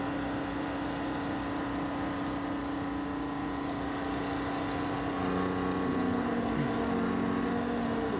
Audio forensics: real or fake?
real